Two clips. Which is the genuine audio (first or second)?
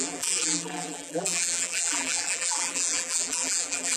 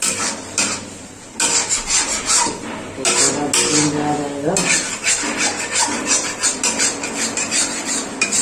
second